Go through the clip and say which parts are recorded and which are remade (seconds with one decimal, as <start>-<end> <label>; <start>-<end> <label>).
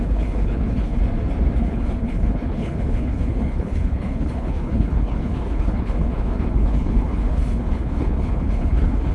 0.0-1.0 remade; 1.0-1.6 recorded; 1.6-9.1 remade